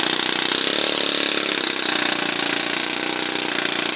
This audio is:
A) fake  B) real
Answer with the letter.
B